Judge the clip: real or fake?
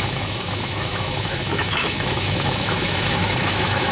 fake